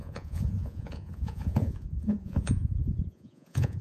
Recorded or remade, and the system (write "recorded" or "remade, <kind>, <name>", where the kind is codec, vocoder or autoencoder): remade, vocoder, Vocos